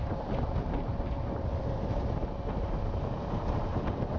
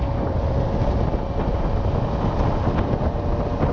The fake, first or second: first